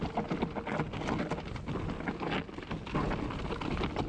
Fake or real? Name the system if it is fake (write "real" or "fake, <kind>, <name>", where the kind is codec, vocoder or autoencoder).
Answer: real